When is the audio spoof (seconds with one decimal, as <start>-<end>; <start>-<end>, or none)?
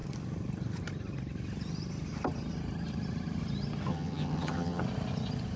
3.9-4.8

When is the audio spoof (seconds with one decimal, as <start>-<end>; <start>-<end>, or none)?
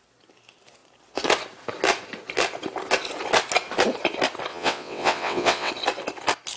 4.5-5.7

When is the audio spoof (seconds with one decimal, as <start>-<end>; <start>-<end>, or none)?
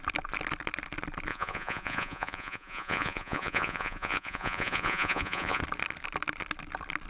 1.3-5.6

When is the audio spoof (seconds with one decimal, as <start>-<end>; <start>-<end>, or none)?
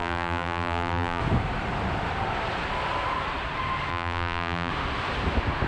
0.0-1.2; 3.9-4.7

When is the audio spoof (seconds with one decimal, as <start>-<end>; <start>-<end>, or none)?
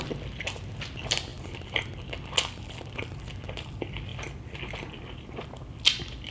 none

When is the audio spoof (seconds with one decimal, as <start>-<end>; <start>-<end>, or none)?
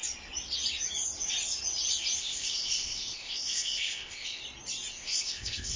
2.2-4.4; 4.9-5.8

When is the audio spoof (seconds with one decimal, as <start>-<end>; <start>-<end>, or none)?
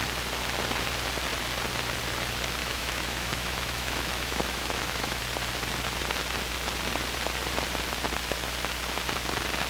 2.6-5.2